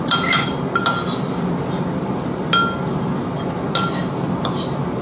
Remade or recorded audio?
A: recorded